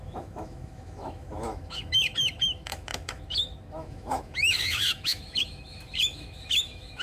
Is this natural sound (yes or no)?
no